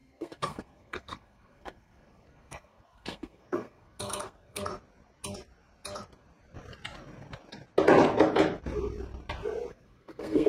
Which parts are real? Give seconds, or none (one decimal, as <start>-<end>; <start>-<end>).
4.7-9.7